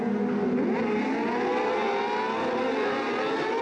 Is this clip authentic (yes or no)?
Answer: yes